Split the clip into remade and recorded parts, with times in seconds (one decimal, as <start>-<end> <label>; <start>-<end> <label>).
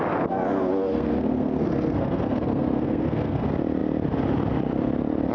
0.0-0.9 recorded; 0.9-3.4 remade; 3.4-5.3 recorded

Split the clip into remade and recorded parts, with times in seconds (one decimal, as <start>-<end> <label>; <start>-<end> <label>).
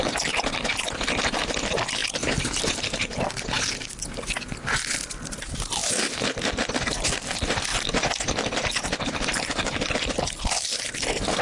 0.0-2.0 recorded; 2.0-2.6 remade; 2.6-5.8 recorded; 5.8-6.5 remade; 6.5-11.4 recorded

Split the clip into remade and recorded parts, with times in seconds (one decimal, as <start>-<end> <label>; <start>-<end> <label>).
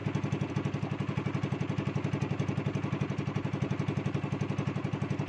0.0-5.3 recorded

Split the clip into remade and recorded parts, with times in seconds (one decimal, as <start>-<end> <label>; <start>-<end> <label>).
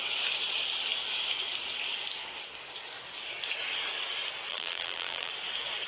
0.0-4.5 recorded; 4.5-5.3 remade; 5.3-5.9 recorded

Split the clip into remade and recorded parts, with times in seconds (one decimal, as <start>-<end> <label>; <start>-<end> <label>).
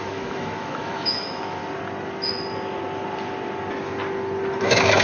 0.0-1.6 remade; 1.6-4.6 recorded; 4.6-5.0 remade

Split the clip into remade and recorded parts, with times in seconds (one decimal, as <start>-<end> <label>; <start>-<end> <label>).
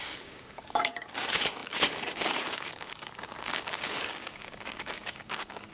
0.0-5.7 remade